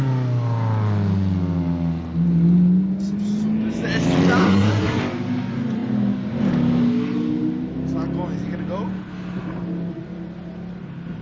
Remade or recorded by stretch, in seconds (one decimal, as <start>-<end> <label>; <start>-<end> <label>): 0.0-4.4 recorded; 4.4-5.0 remade; 5.0-11.2 recorded